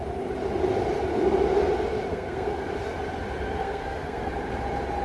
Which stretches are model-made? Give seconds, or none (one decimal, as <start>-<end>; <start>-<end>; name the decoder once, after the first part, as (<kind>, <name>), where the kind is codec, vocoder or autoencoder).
2.1-2.7 (codec, SNAC); 3.6-4.3

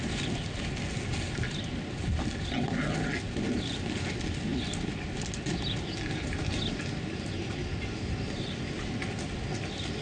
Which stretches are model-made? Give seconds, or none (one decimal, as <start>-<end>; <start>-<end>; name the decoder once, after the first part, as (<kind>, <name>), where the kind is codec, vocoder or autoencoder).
4.5-5.8 (vocoder, BigVGAN v2)

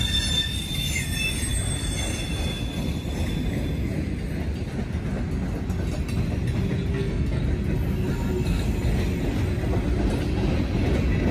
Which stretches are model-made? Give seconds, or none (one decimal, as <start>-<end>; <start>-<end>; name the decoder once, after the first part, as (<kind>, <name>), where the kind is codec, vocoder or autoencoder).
6.9-7.4 (codec, SNAC)

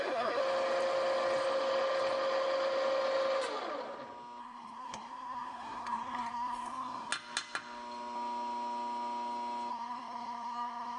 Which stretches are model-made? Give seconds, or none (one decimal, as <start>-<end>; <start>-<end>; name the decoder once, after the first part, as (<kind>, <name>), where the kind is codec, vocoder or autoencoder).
0.0-0.4 (codec, SNAC); 4.4-7.1; 9.7-11.0

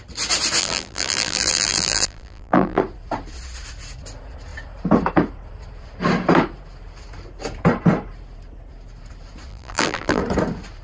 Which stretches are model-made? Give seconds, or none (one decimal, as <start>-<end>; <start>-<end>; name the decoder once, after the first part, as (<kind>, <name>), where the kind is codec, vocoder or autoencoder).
0.6-2.8 (vocoder, BigVGAN v2); 9.5-10.2

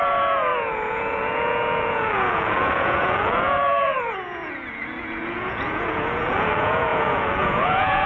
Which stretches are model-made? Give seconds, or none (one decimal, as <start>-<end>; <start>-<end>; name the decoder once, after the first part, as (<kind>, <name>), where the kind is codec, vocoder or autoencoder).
0.0-8.1 (vocoder, Vocos)